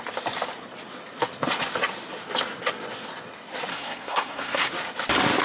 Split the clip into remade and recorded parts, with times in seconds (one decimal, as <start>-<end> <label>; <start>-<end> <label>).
0.0-3.7 recorded; 3.7-4.7 remade; 4.7-5.4 recorded